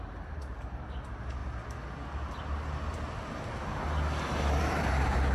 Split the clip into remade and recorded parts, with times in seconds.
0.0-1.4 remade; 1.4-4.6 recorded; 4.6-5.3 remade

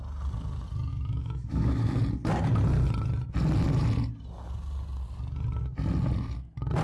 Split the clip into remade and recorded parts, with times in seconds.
0.0-0.9 recorded; 0.9-2.0 remade; 2.0-6.8 recorded

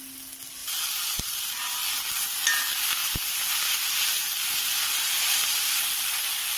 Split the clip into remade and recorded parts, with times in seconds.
0.0-0.6 recorded; 0.6-1.4 remade; 1.4-3.0 recorded; 3.0-6.6 remade

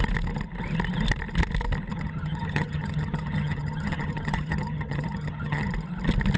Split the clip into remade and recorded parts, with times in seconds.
0.0-1.9 recorded; 1.9-5.7 remade; 5.7-6.4 recorded

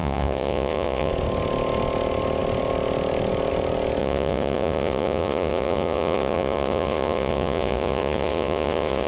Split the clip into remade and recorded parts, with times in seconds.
0.0-1.1 remade; 1.1-4.0 recorded; 4.0-9.1 remade